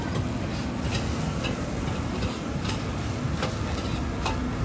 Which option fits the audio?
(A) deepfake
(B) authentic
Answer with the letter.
B